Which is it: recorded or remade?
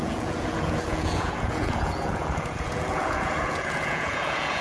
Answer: remade